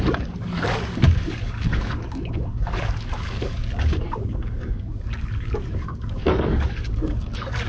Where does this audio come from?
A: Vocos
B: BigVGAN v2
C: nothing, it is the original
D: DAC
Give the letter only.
D